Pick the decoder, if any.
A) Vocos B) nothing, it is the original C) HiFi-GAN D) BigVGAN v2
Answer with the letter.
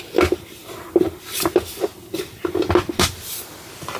B